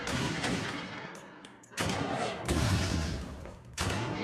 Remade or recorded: remade